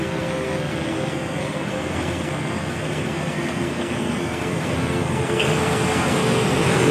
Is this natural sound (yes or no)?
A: no